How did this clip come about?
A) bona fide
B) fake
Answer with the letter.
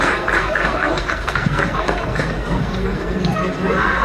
B